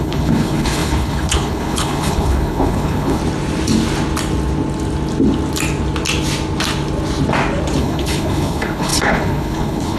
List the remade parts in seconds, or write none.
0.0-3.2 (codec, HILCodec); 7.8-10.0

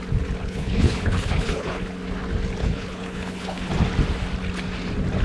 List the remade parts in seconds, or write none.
0.4-1.9 (codec, HILCodec); 2.6-3.7

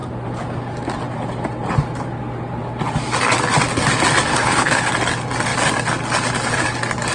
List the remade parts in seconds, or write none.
4.3-4.9 (codec, HILCodec)

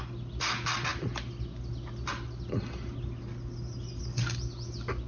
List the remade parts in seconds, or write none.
none